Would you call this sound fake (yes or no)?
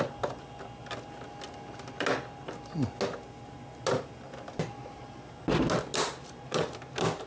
no